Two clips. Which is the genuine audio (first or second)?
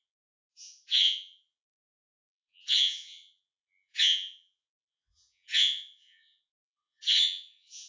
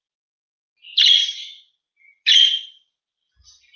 second